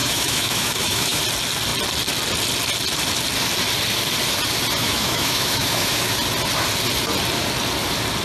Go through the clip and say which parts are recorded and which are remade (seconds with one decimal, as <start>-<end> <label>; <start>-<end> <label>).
0.0-1.2 remade; 1.2-4.8 recorded; 4.8-6.0 remade; 6.0-8.2 recorded